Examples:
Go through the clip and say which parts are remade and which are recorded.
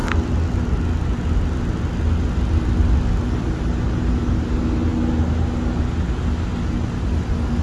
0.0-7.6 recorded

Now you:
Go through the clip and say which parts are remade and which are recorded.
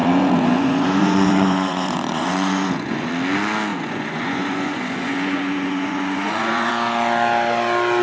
0.0-3.1 remade; 3.1-3.7 recorded; 3.7-6.7 remade; 6.7-8.0 recorded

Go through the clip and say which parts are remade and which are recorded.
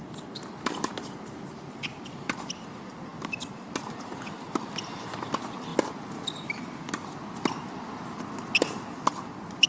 0.0-9.7 recorded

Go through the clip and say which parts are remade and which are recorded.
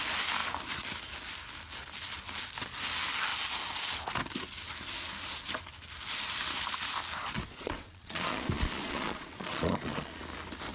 0.0-7.2 recorded; 7.2-10.2 remade; 10.2-10.7 recorded